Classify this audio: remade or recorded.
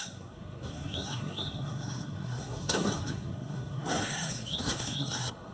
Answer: remade